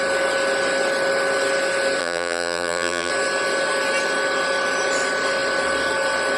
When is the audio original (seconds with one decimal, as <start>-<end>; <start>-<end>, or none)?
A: 0.0-2.0; 3.1-6.4